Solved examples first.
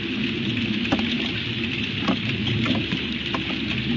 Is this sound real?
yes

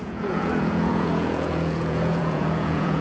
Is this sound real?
no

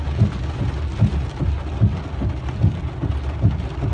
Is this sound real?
yes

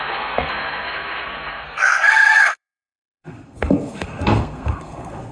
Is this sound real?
no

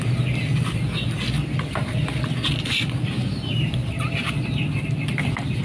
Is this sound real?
yes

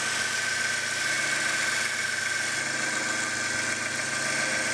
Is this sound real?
yes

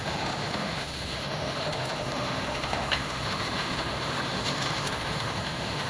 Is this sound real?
no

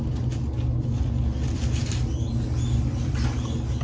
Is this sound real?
yes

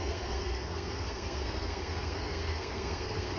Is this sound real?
no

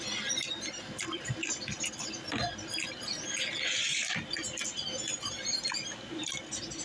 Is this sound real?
yes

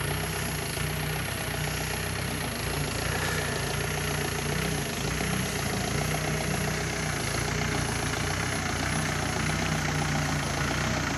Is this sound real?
yes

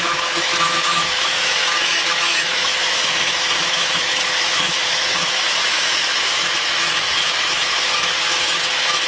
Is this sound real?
no